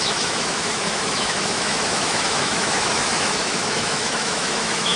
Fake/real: fake